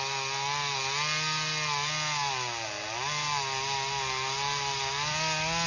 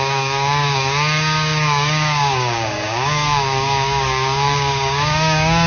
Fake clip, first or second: second